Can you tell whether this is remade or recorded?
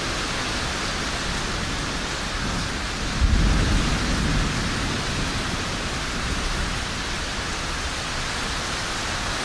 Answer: recorded